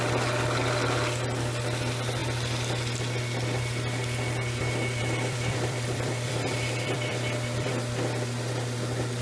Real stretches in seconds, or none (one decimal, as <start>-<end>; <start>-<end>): 0.0-5.0; 7.7-9.2